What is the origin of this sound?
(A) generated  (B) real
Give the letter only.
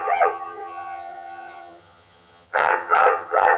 A